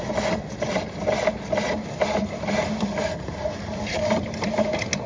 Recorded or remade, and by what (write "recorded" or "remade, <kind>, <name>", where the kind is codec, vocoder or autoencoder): recorded